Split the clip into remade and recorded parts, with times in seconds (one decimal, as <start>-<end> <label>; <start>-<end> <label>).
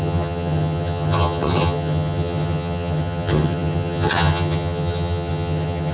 0.0-5.9 remade